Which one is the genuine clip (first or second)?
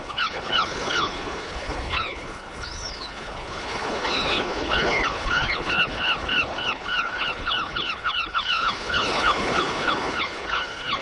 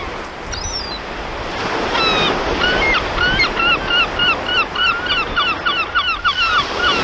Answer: second